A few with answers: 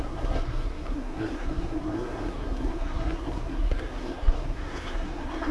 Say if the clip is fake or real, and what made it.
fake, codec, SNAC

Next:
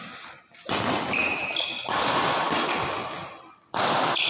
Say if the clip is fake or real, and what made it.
real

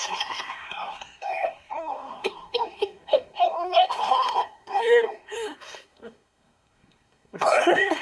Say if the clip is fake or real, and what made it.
fake, codec, SNAC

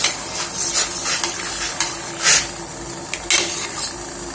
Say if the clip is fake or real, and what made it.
real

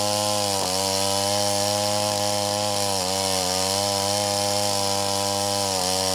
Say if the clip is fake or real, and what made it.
real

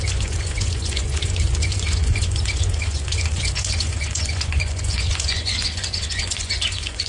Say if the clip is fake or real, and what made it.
fake, vocoder, Vocos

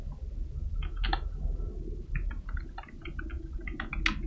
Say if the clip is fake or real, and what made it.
real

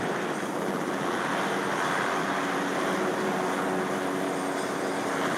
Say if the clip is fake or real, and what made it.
real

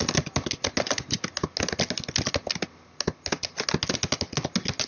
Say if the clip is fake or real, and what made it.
real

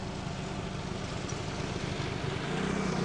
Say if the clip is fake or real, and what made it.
real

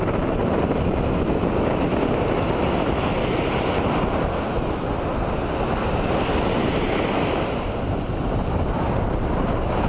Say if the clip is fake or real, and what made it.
real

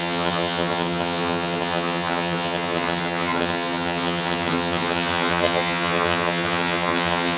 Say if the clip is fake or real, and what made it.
fake, vocoder, HiFi-GAN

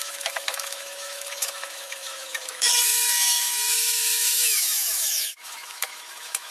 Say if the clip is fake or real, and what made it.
fake, autoencoder, DAC-VAE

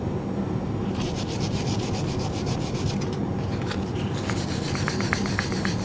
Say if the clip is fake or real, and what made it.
fake, vocoder, BigVGAN v2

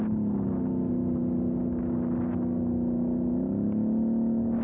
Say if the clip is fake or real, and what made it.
real